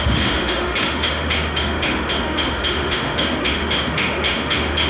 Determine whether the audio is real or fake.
fake